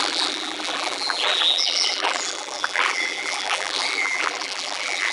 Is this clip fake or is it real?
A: fake